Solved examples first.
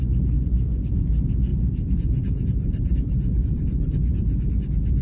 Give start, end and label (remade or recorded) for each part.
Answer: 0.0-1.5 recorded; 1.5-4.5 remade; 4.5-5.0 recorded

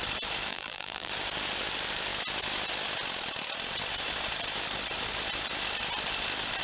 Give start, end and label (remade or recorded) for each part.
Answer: 0.0-0.5 recorded; 0.5-1.1 remade; 1.1-6.6 recorded